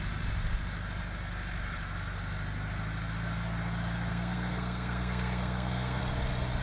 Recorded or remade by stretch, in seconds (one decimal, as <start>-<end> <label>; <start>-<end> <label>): 0.0-4.1 recorded; 4.1-6.0 remade; 6.0-6.6 recorded